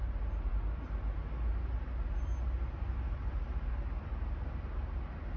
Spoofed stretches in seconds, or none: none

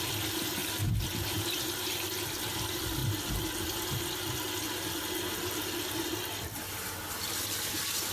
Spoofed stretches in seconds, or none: 0.0-0.6; 2.4-3.0; 5.9-8.1

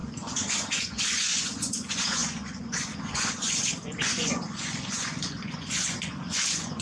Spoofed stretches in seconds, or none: 0.0-6.8

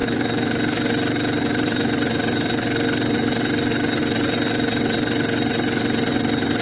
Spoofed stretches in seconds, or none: none

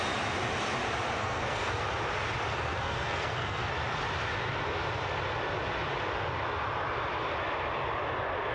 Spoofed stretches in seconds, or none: 1.2-1.8; 2.5-3.7